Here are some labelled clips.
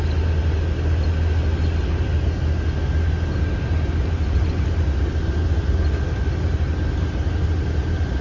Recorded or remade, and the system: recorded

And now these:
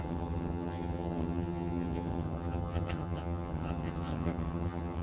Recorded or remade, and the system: remade, vocoder, HiFi-GAN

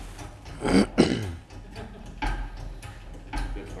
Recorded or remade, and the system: recorded